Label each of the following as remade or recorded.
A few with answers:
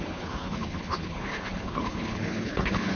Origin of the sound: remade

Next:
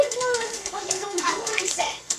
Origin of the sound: remade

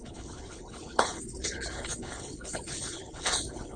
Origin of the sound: remade